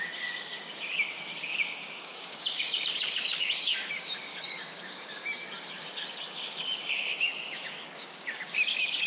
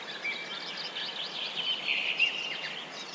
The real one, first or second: second